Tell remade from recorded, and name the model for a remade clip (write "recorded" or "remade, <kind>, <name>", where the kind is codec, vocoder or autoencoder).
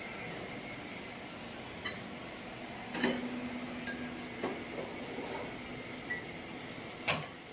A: recorded